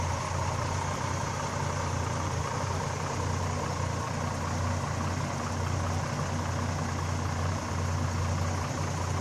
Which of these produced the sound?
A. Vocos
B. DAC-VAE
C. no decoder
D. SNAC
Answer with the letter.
C